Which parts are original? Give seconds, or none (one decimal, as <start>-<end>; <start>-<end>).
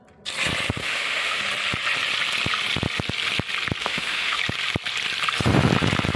0.0-0.8; 1.4-3.8; 4.4-6.2